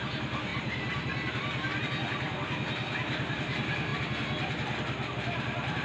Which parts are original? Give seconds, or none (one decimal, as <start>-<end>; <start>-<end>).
0.0-5.8